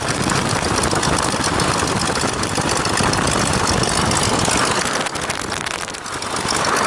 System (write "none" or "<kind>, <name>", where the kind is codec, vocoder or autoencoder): none